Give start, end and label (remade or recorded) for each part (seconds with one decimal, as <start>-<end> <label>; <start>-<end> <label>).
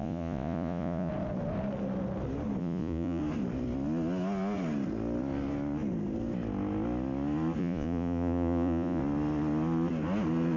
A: 0.0-1.1 remade; 1.1-2.6 recorded; 2.6-3.2 remade; 3.2-7.6 recorded; 7.6-9.0 remade; 9.0-10.6 recorded